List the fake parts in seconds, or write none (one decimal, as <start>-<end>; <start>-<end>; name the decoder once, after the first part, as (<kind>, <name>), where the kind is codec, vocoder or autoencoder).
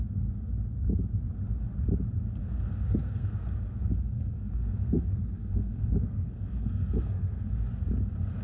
2.4-7.4 (codec, SNAC)